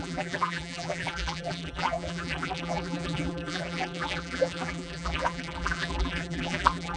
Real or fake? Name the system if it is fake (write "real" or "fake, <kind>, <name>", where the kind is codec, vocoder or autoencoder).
fake, vocoder, BigVGAN v2